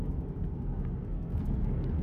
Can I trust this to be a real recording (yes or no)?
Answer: no